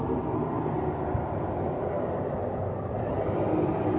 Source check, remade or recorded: recorded